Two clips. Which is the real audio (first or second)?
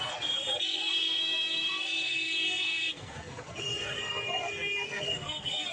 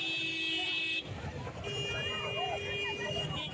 second